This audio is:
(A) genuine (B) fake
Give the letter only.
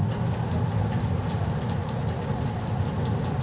A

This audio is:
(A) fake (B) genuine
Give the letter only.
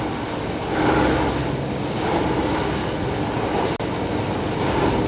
B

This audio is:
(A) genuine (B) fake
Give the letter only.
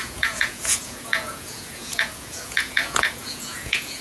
B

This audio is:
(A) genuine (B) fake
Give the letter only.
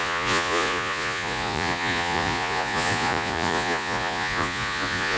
B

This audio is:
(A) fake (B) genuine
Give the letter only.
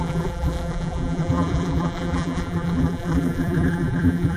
A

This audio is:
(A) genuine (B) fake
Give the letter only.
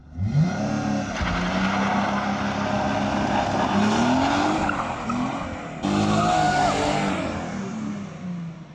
A